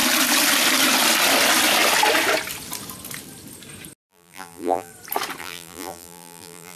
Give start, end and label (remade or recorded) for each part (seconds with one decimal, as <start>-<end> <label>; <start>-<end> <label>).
0.0-4.1 recorded; 4.1-4.9 remade; 4.9-5.4 recorded; 5.4-6.8 remade